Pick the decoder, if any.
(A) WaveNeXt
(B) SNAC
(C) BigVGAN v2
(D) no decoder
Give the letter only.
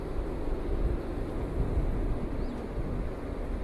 D